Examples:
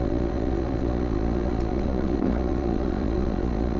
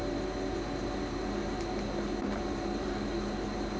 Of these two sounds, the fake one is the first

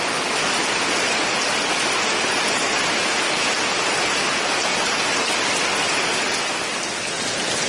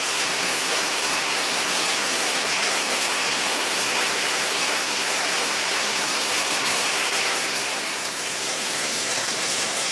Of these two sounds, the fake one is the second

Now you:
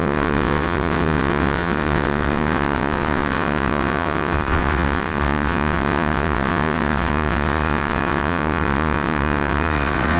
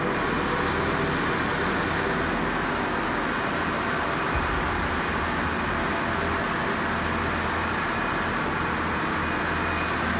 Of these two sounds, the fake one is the first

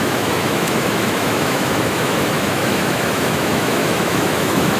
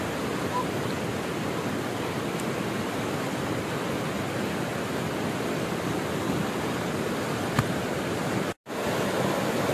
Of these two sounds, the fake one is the first